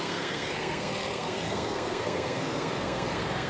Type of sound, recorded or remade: remade